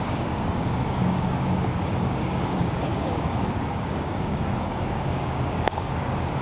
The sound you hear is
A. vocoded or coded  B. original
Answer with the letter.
A